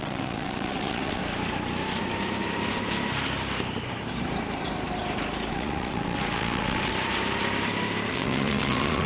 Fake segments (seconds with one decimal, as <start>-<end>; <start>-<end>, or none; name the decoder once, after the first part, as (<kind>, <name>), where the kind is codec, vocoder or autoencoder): 0.0-1.2 (vocoder, WaveNeXt); 5.5-6.9; 8.1-9.1

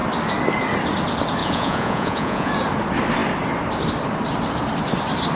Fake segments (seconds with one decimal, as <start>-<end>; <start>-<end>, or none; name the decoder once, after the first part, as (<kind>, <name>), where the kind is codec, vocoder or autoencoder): 1.4-2.5 (vocoder, Vocos)

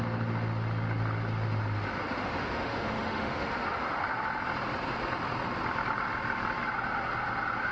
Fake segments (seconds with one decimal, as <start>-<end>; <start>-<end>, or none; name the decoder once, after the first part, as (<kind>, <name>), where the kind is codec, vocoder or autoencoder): 2.0-4.2 (autoencoder, DAC-VAE)

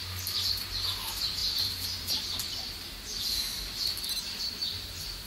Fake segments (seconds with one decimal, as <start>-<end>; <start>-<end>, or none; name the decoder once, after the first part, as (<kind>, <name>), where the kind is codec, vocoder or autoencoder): 1.4-4.4 (vocoder, BigVGAN v2)

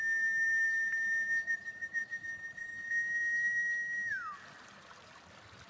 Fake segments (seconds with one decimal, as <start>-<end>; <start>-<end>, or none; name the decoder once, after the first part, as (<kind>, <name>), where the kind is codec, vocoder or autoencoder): none